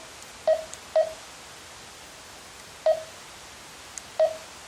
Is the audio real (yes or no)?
yes